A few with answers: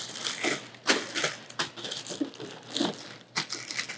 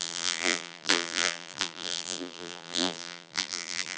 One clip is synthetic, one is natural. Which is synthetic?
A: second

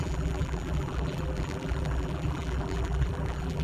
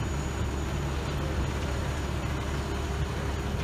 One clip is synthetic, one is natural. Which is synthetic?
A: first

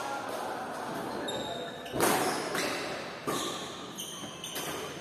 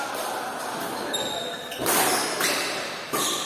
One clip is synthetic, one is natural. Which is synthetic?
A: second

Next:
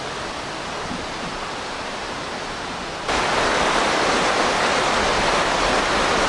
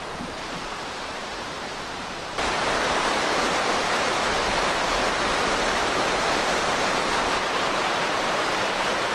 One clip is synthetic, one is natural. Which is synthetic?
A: second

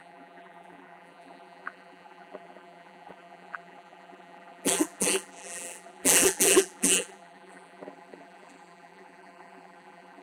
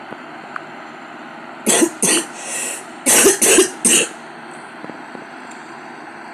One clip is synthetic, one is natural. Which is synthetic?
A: first